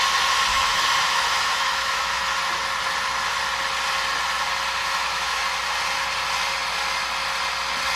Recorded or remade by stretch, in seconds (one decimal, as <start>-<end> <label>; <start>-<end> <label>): 0.0-0.5 recorded; 0.5-2.2 remade; 2.2-4.8 recorded; 4.8-5.4 remade; 5.4-8.0 recorded